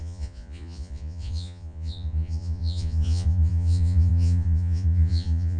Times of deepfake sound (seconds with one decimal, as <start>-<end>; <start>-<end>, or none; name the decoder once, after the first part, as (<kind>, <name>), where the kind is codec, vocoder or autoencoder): 0.0-5.6 (vocoder, Vocos)